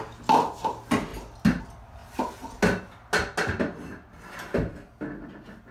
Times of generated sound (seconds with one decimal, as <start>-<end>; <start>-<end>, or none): none